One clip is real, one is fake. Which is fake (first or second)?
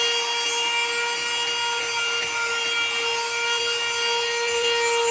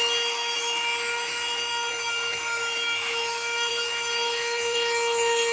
second